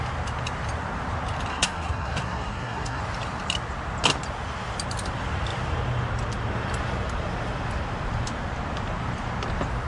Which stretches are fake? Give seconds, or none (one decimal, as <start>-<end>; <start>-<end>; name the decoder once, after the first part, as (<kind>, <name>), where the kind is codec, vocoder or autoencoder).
1.5-3.0 (codec, SNAC)